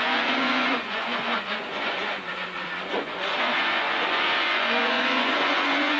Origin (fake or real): fake